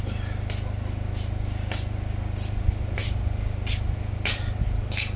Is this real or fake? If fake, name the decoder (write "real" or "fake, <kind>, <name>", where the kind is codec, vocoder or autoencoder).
real